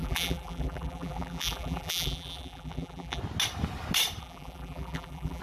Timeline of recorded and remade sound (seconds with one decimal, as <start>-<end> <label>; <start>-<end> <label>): 0.0-3.2 remade; 3.2-4.2 recorded; 4.2-5.4 remade